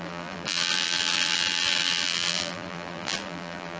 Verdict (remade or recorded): remade